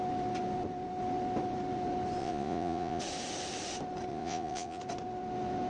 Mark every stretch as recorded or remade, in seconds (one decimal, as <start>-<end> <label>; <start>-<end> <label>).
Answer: 0.0-2.2 recorded; 2.2-3.0 remade; 3.0-4.1 recorded; 4.1-4.8 remade; 4.8-5.7 recorded